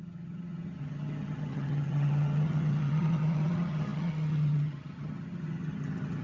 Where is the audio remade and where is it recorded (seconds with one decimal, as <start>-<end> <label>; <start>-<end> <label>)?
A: 0.0-6.2 remade